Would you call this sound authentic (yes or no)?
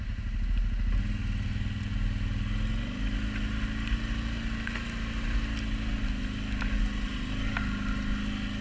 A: yes